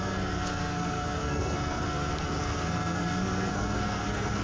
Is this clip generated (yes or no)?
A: yes